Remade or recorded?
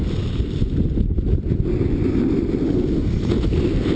recorded